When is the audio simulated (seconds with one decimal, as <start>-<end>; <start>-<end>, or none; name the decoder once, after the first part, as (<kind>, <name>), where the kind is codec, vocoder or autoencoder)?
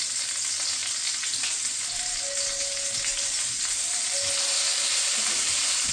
4.7-5.9 (vocoder, BigVGAN v2)